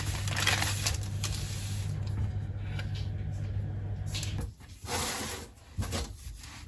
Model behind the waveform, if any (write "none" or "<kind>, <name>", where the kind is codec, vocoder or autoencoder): none